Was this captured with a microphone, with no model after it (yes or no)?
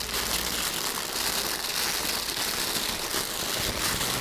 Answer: yes